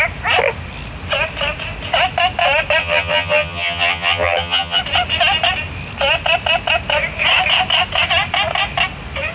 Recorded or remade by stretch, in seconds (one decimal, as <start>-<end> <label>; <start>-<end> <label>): 0.0-2.8 recorded; 2.8-4.8 remade; 4.8-9.3 recorded